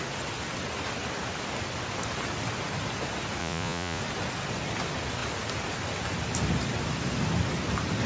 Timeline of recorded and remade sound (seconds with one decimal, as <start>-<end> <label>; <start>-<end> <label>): 0.0-3.4 recorded; 3.4-4.0 remade; 4.0-8.1 recorded

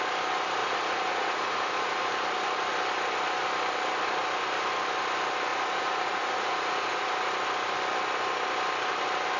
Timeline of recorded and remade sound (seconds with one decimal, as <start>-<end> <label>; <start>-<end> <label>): 0.0-0.6 recorded; 0.6-2.1 remade; 2.1-5.5 recorded; 5.5-7.1 remade; 7.1-9.4 recorded

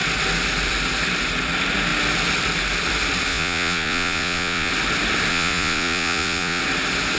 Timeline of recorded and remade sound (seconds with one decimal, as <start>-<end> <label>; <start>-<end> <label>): 0.0-3.3 recorded; 3.3-4.7 remade; 4.7-5.3 recorded; 5.3-6.6 remade; 6.6-7.2 recorded

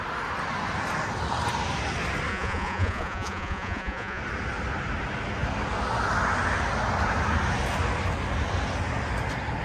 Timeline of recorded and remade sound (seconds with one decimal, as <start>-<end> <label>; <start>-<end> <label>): 0.0-2.3 recorded; 2.3-4.2 remade; 4.2-9.6 recorded

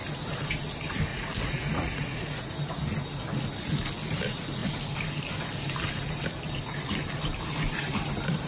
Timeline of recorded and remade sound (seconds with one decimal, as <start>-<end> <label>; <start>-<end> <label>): 0.0-1.1 recorded; 1.1-2.5 remade; 2.5-8.5 recorded

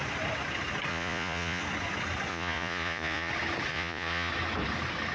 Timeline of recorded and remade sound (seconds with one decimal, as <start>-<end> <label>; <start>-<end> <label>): 0.0-0.9 recorded; 0.9-1.6 remade; 1.6-2.3 recorded; 2.3-3.3 remade; 3.3-3.7 recorded; 3.7-4.3 remade; 4.3-5.1 recorded